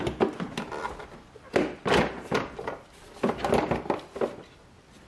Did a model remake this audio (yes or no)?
no